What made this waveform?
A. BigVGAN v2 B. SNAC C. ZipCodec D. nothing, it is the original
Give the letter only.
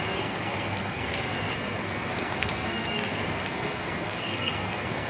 B